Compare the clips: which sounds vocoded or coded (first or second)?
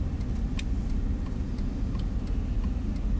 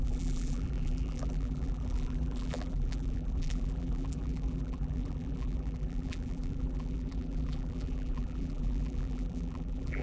second